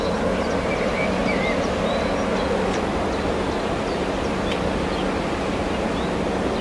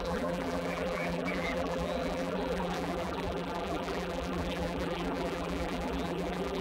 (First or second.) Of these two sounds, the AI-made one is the second